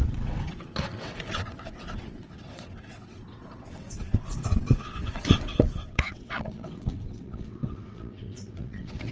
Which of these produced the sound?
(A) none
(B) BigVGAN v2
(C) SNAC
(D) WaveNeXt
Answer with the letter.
D